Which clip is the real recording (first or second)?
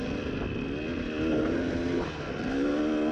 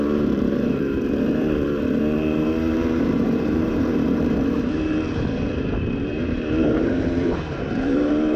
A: first